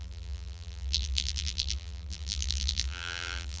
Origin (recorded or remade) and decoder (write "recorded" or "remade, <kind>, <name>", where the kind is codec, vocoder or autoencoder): remade, vocoder, BigVGAN v2